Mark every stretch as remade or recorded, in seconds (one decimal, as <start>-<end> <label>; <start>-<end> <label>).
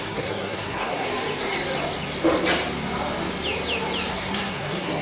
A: 0.0-1.1 remade; 1.1-4.1 recorded; 4.1-5.0 remade